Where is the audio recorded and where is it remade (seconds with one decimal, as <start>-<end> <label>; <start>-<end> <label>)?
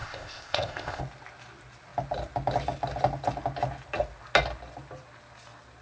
0.0-1.0 remade; 1.0-5.8 recorded